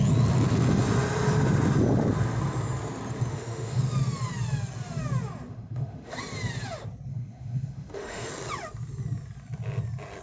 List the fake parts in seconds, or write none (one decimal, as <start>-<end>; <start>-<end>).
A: 3.3-3.8; 5.5-6.1; 7.1-8.3